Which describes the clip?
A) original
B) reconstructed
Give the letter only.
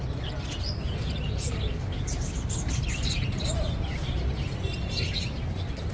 A